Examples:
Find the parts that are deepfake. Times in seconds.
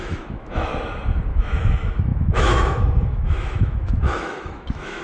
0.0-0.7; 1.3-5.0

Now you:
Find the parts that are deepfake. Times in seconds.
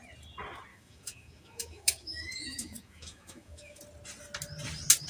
0.7-3.8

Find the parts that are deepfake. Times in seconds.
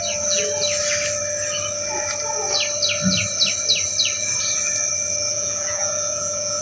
5.3-6.6